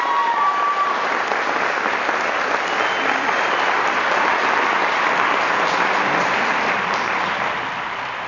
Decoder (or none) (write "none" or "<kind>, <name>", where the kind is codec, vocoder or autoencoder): none